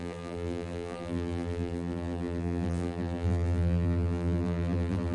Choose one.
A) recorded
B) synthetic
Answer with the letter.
B